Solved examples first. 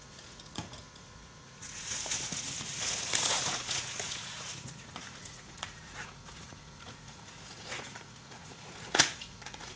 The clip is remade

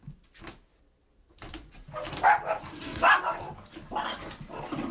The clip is recorded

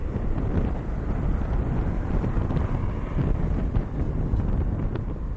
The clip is recorded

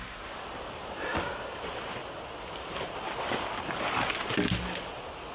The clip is recorded